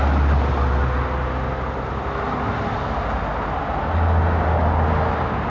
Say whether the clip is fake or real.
real